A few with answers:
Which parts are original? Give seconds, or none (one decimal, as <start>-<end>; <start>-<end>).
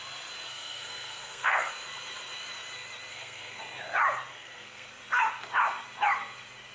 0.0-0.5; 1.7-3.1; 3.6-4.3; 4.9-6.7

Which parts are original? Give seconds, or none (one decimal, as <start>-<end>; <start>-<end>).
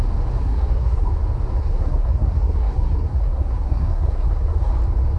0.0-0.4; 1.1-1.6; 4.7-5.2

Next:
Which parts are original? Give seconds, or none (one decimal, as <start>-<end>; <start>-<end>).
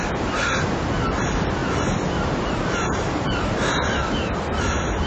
0.0-5.1